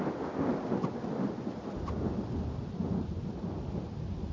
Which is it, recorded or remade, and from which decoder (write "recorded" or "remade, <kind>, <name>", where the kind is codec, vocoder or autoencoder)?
recorded